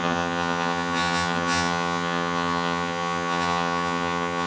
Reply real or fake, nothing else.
fake